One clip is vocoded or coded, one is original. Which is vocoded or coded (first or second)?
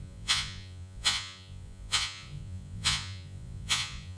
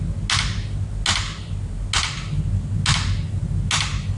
first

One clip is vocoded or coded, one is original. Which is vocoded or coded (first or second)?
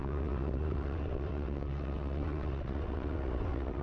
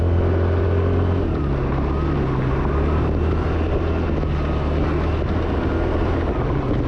first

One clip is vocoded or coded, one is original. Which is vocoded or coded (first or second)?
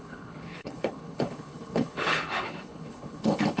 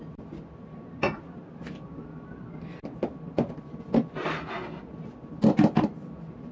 first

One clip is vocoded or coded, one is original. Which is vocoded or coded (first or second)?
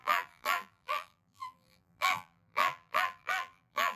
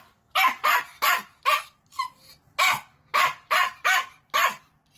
first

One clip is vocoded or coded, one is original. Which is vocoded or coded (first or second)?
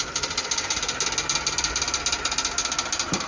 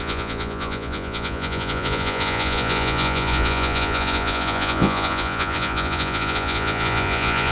second